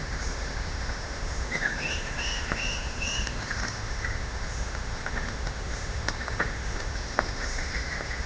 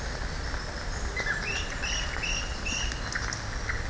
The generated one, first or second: first